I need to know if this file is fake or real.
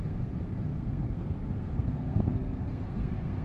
fake